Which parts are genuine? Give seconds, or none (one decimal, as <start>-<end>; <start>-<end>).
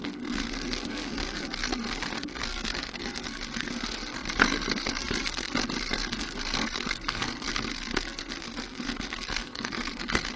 none